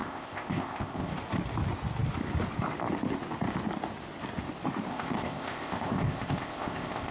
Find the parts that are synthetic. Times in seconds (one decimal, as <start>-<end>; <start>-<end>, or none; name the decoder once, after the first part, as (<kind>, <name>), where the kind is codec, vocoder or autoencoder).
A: 0.0-1.1 (codec, ZipCodec); 4.9-7.1